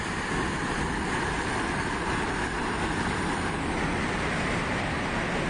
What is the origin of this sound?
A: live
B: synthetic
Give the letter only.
A